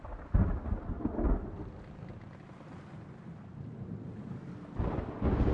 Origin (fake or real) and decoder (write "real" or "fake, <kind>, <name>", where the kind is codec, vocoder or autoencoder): real